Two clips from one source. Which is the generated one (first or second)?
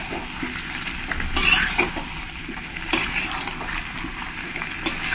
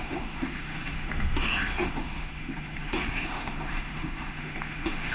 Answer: second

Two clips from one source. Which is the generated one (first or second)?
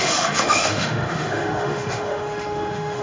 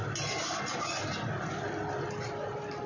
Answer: first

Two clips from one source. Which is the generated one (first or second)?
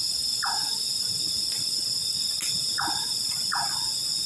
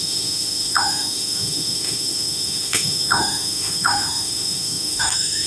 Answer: second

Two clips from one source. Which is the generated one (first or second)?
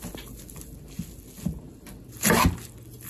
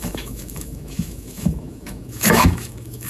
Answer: second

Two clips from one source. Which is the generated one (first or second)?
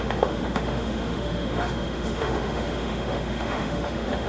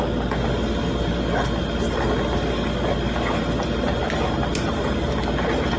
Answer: first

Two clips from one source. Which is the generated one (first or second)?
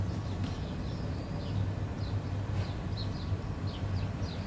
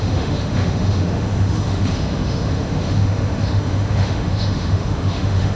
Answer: second